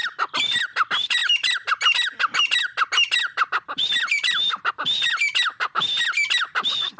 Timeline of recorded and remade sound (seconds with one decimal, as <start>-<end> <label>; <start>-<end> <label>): 0.0-7.0 recorded